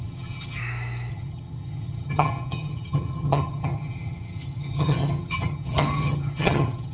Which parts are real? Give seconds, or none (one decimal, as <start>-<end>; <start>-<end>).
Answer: 0.6-1.1